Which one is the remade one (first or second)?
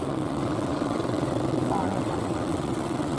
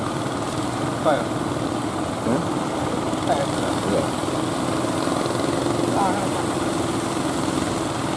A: first